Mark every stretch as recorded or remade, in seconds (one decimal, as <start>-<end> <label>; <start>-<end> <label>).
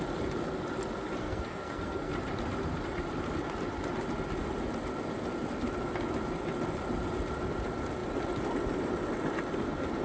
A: 0.0-1.2 recorded; 1.2-2.1 remade; 2.1-10.0 recorded